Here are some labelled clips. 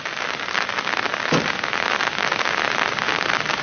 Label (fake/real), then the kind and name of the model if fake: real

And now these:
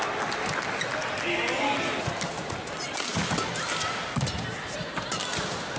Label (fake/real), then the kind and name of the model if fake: real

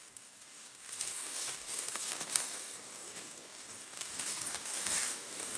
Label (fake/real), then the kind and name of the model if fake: fake, codec, DAC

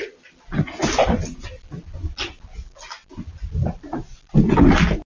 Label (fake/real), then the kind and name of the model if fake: real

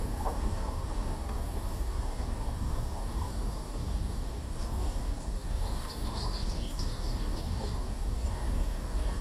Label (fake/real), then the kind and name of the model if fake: fake, codec, DAC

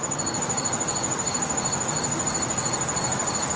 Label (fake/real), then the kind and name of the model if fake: real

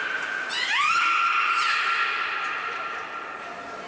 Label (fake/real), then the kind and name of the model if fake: real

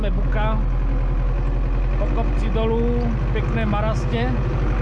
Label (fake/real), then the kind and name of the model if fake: real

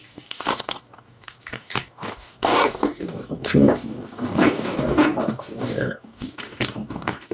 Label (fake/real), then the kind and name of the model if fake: fake, codec, DAC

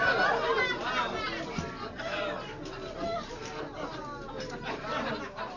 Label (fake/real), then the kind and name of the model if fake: real